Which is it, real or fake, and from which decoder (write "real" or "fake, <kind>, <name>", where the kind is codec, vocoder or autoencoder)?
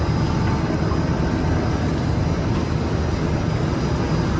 real